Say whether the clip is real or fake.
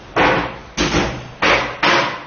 real